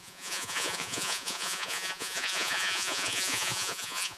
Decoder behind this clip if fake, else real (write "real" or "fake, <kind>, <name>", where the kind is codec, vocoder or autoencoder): fake, vocoder, Vocos